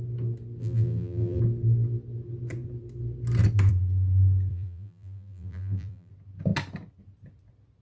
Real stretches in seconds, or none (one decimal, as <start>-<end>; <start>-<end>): 0.0-0.6; 1.4-4.5; 6.1-7.8